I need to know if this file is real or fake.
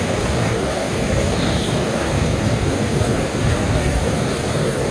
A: fake